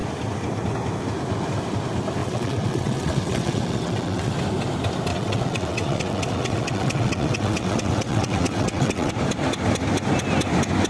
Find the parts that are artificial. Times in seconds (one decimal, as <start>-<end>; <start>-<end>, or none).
2.2-4.3; 5.1-9.1